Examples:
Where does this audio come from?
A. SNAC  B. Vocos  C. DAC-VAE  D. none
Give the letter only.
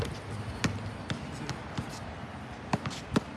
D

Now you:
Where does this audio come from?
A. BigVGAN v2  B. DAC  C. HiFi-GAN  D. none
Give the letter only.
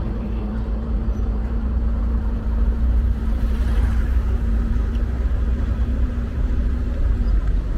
A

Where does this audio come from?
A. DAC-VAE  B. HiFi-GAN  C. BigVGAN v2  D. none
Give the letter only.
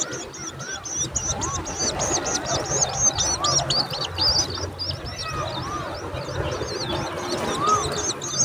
D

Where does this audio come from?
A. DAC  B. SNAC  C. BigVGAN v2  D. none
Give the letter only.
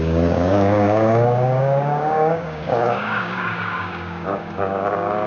A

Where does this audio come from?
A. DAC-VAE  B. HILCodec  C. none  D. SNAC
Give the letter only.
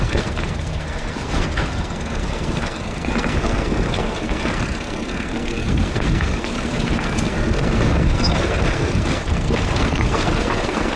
D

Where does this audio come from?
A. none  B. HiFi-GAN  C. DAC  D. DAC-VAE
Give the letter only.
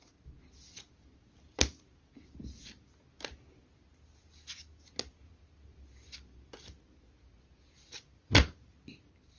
A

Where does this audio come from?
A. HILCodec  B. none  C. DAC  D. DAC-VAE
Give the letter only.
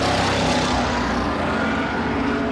B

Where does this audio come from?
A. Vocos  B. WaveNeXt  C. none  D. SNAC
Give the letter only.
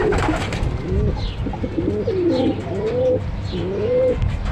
C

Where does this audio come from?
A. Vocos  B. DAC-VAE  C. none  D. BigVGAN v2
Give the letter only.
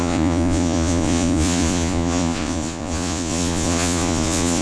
A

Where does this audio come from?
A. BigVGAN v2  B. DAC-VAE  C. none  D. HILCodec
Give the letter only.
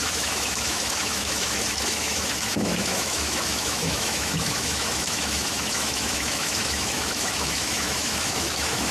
B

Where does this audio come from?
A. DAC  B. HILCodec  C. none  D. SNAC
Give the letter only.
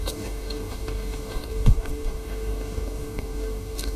A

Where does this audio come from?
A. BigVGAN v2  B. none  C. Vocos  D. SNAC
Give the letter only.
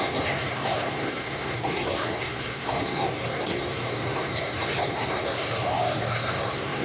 D